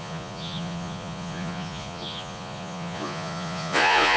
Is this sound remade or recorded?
remade